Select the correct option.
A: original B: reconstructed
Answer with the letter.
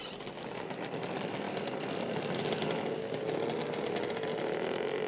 A